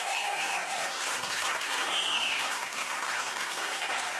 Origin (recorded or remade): remade